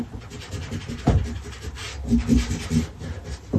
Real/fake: real